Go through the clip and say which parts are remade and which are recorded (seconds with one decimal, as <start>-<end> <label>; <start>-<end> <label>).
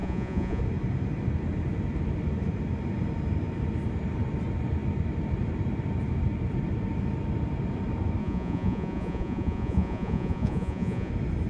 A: 0.0-0.6 remade; 0.6-8.2 recorded; 8.2-11.1 remade; 11.1-11.5 recorded